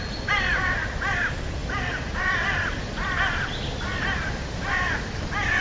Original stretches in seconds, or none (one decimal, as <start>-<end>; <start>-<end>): 0.0-5.6